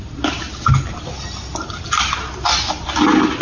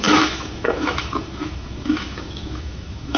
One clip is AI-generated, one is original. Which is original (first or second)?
first